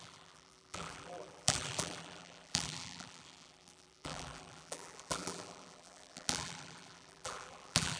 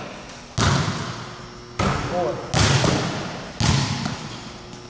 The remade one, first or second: first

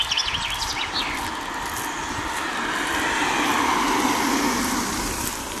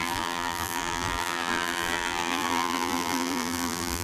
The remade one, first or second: second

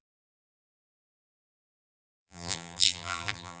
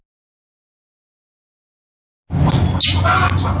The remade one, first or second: first